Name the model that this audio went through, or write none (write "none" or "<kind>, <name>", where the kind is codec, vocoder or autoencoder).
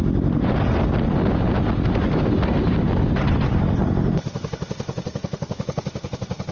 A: none